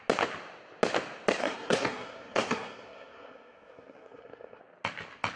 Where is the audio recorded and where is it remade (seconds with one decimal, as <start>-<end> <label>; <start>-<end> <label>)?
0.0-1.4 recorded; 1.4-4.6 remade; 4.6-5.4 recorded